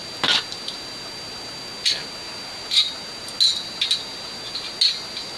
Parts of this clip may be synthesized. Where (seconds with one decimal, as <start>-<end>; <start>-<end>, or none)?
none